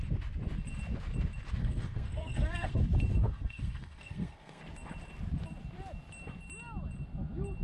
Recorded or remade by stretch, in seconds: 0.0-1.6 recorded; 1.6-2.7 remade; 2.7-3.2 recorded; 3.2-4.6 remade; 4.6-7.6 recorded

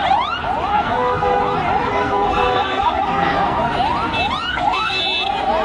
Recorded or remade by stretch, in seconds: 0.0-0.7 recorded; 0.7-1.4 remade; 1.4-1.9 recorded; 1.9-3.7 remade; 3.7-4.5 recorded; 4.5-5.0 remade; 5.0-5.6 recorded

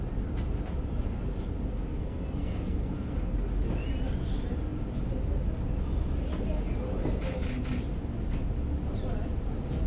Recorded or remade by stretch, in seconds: 0.0-1.7 recorded; 1.7-3.3 remade; 3.3-9.9 recorded

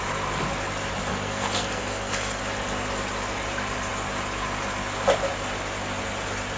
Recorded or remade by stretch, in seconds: 0.0-1.1 recorded; 1.1-2.4 remade; 2.4-6.6 recorded